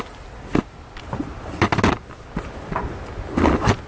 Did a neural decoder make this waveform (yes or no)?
no